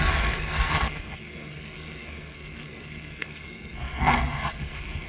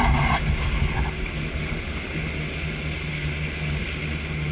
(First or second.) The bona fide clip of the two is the second